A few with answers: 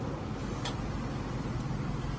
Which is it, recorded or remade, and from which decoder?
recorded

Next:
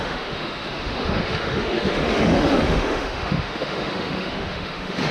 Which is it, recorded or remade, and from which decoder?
remade, autoencoder, DAC-VAE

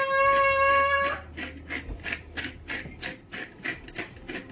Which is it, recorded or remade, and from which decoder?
recorded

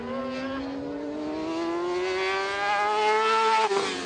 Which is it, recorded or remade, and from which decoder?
recorded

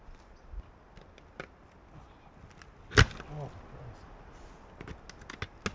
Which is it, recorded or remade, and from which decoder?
recorded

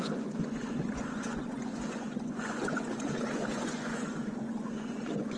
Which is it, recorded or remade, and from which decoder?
remade, vocoder, Vocos